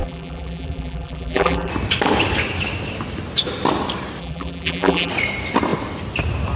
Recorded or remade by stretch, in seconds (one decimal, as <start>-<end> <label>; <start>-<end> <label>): 0.0-1.7 remade; 1.7-4.2 recorded; 4.2-5.1 remade; 5.1-6.6 recorded